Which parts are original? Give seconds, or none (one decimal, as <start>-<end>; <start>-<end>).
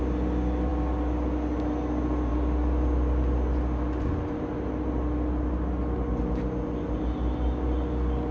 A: 0.0-8.3